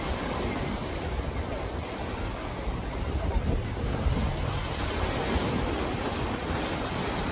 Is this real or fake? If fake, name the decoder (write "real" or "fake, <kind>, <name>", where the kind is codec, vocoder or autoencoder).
real